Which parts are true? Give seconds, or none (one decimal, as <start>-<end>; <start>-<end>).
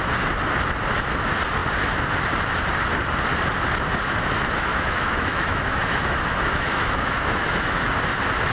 0.0-4.7; 7.9-8.5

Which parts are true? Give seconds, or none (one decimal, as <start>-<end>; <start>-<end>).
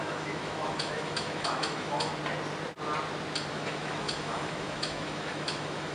2.1-3.5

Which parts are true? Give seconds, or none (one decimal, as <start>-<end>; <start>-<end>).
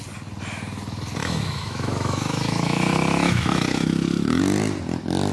0.0-1.2; 4.4-5.3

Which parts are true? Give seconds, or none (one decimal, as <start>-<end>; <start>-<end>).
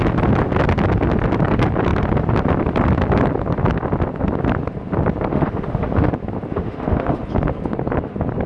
0.0-5.3; 6.1-6.5; 7.2-8.5